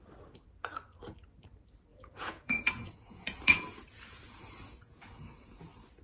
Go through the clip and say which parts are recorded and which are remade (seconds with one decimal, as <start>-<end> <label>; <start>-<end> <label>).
0.0-1.9 recorded; 1.9-5.5 remade; 5.5-6.0 recorded